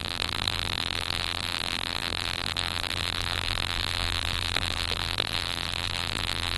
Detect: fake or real fake